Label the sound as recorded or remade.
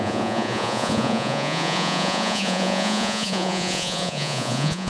remade